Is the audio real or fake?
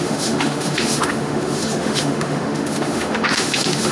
fake